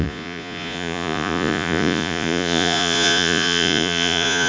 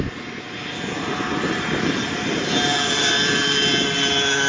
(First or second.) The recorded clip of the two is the second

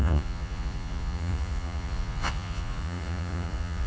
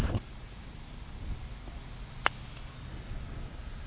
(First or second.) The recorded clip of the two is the second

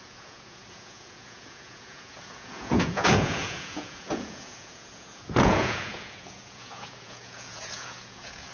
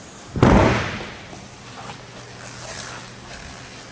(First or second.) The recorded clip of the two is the second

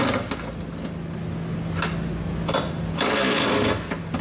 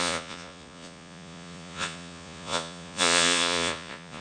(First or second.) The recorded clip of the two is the first